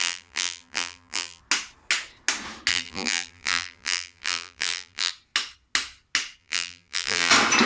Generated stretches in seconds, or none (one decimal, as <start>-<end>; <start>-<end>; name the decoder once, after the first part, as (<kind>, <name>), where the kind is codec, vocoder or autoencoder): 0.0-1.4 (vocoder, BigVGAN v2); 2.7-5.1; 6.4-7.3